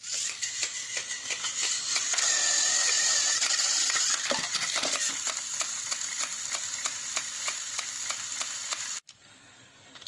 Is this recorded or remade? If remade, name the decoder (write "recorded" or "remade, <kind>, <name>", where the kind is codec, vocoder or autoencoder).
remade, vocoder, BigVGAN v2